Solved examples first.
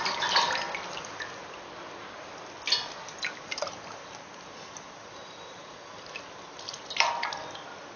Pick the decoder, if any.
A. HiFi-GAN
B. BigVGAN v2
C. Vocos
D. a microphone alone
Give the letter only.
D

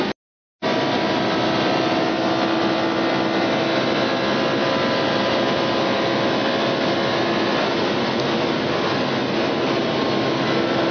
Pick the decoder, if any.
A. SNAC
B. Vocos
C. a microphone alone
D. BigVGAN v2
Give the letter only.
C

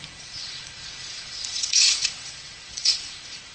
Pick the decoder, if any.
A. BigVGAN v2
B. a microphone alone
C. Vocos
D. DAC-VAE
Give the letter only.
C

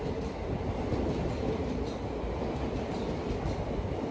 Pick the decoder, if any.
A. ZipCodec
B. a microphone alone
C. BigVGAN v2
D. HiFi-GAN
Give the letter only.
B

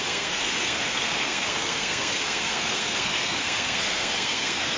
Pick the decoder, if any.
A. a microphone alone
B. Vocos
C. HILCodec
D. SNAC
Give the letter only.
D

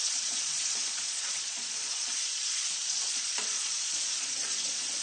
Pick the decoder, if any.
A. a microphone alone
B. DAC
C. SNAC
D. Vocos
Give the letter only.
D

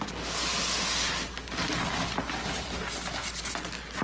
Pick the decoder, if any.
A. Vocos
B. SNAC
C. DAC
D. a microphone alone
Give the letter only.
D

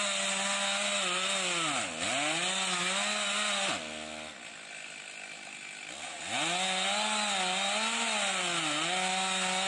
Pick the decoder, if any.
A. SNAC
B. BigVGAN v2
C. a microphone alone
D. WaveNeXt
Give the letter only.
C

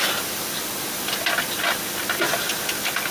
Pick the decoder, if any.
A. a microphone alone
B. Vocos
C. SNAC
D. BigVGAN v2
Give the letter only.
A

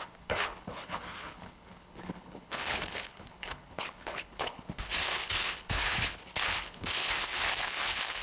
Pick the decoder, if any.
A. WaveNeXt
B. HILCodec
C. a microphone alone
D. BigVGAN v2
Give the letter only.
B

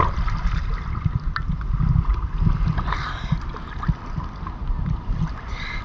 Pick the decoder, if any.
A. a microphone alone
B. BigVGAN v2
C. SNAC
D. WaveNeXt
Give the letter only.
A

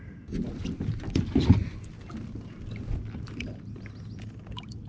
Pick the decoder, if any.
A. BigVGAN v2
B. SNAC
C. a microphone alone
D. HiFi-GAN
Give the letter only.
C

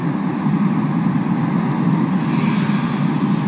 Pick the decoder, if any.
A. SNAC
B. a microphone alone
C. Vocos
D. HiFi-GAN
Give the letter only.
B